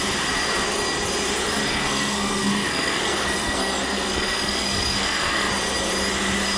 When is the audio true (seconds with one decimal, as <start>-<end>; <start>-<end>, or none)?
0.0-1.7; 5.5-6.6